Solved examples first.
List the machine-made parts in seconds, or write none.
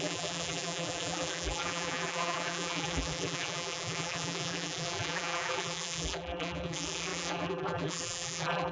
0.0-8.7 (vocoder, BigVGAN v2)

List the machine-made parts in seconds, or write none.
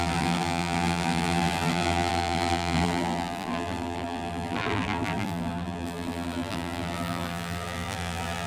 0.0-8.5 (vocoder, BigVGAN v2)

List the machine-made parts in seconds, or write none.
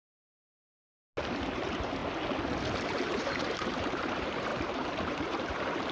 0.0-1.0 (vocoder, BigVGAN v2); 1.6-2.0; 2.8-5.9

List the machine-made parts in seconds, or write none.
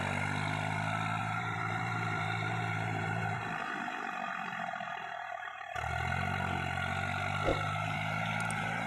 1.2-5.9 (vocoder, BigVGAN v2); 7.5-8.9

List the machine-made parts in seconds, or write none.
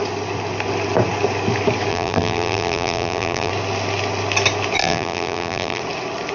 1.9-3.5 (vocoder, BigVGAN v2); 4.8-5.8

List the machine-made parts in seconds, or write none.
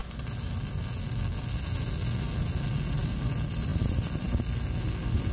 3.7-4.4 (vocoder, BigVGAN v2)